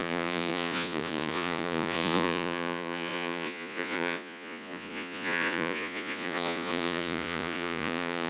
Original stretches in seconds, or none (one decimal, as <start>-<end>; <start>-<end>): none

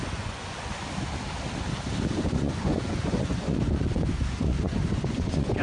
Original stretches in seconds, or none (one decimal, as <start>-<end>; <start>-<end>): 0.7-2.1

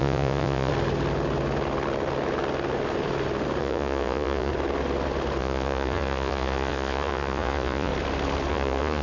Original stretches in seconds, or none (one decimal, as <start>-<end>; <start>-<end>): 0.7-3.6; 4.5-5.4; 7.9-8.5

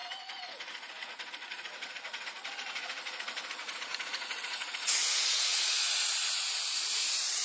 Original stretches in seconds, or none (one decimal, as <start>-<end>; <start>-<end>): none